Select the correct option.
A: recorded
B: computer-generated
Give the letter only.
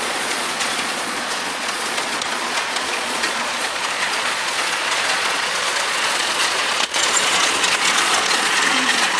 B